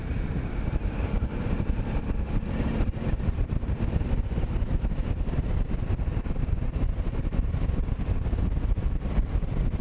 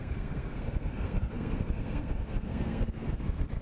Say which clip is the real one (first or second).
first